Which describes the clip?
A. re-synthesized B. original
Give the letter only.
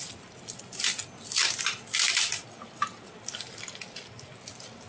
B